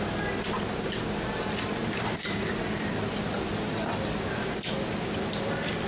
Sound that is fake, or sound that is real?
real